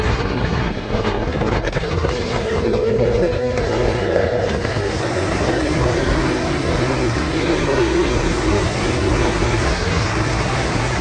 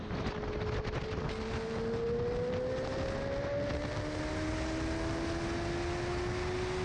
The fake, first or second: first